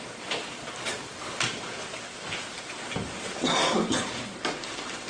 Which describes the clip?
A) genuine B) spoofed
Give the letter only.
A